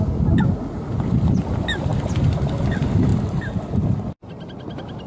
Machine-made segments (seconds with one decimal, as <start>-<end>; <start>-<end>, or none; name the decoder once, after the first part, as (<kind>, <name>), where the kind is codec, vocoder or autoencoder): none